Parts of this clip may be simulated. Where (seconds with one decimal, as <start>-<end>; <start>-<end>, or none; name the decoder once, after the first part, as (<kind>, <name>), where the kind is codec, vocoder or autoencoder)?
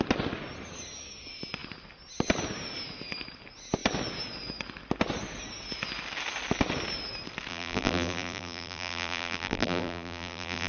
7.5-10.7 (vocoder, BigVGAN v2)